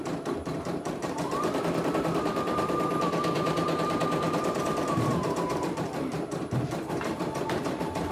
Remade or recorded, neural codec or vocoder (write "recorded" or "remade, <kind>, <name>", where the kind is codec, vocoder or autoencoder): remade, vocoder, BigVGAN v2